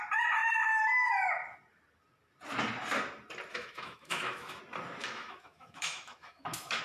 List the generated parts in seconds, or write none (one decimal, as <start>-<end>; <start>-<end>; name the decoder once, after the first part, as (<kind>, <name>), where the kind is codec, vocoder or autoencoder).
3.5-4.6 (autoencoder, DAC-VAE); 5.0-6.8